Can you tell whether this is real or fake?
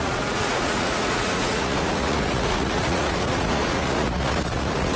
fake